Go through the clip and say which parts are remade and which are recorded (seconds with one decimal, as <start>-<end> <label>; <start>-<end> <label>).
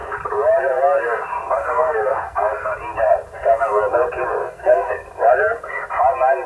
0.0-1.6 recorded; 1.6-2.7 remade; 2.7-4.4 recorded; 4.4-4.9 remade; 4.9-6.5 recorded